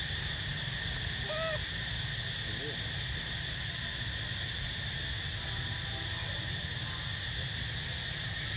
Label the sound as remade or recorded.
recorded